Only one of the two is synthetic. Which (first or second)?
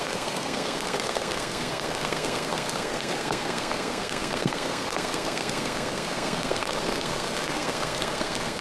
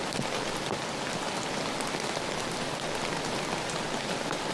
first